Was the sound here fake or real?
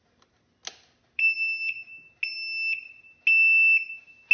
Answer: real